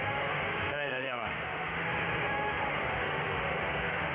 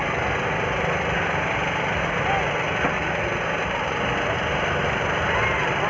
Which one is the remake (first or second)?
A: first